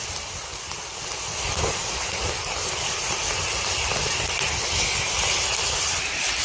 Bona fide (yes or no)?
yes